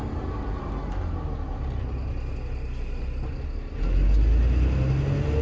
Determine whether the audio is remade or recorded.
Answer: recorded